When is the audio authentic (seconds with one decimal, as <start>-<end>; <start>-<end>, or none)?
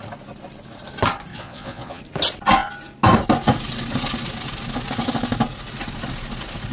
0.0-1.3; 2.0-6.7